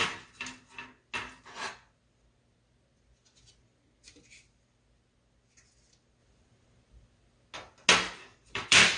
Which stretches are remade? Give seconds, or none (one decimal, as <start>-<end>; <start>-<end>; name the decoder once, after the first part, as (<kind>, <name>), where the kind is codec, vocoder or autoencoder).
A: 8.4-9.0 (vocoder, BigVGAN v2)